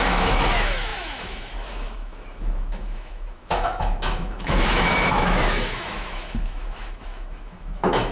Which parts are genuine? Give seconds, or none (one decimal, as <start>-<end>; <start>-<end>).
none